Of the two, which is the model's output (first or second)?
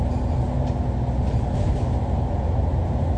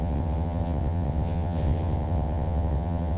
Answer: second